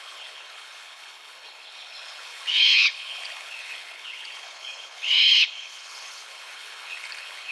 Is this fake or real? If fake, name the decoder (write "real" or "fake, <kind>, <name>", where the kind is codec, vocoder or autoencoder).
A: fake, codec, HILCodec